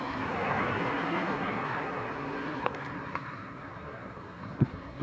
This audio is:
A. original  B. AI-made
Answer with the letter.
B